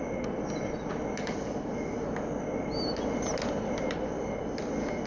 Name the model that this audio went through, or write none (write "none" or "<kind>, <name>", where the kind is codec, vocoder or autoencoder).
none